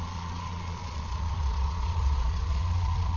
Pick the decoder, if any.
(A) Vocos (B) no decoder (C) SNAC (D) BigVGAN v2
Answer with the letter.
A